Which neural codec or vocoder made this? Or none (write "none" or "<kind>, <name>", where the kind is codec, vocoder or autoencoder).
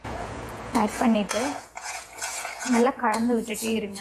vocoder, Vocos